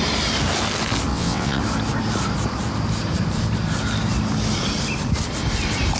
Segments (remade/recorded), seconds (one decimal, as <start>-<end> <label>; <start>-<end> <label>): 0.0-1.1 recorded; 1.1-1.6 remade; 1.6-6.0 recorded